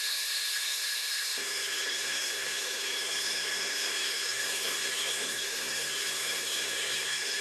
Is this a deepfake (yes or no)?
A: yes